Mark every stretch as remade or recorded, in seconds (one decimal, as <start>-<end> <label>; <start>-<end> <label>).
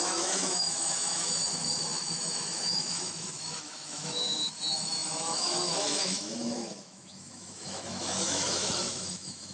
0.0-9.5 remade